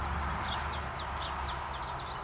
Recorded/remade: recorded